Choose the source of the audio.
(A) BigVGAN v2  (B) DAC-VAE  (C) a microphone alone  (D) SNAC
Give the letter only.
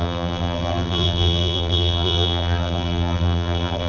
A